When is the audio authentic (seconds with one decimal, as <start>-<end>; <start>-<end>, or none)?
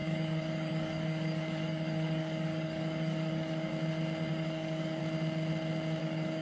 3.7-4.3; 5.0-6.0